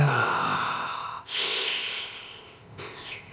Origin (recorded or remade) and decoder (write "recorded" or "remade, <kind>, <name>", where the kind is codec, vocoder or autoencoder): remade, codec, ZipCodec